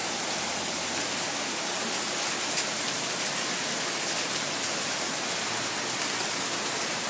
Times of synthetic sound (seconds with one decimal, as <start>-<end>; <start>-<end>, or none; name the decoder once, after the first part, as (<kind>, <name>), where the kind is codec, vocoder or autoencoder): none